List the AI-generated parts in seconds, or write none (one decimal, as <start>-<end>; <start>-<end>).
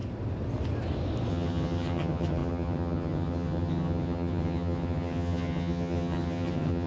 1.3-6.9